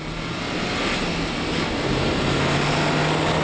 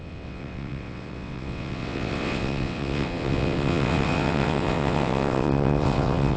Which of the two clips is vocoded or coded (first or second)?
second